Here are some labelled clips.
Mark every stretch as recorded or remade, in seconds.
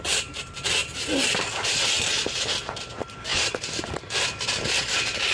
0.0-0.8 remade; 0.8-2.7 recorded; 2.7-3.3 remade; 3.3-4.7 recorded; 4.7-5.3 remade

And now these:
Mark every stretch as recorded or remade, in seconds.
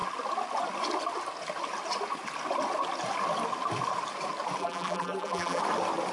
0.0-4.6 recorded; 4.6-5.6 remade; 5.6-6.1 recorded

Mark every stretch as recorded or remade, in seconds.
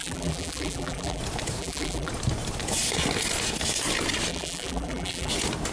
0.0-1.2 remade; 1.2-1.6 recorded; 1.6-2.1 remade; 2.1-4.3 recorded; 4.3-5.3 remade; 5.3-5.7 recorded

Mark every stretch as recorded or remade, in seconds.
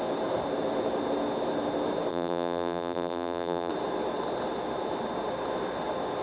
0.0-2.1 recorded; 2.1-3.7 remade; 3.7-6.2 recorded